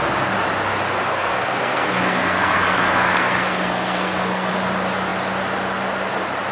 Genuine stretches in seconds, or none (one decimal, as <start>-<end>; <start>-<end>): 0.0-1.1; 4.5-6.5